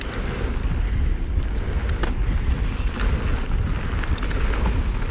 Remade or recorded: recorded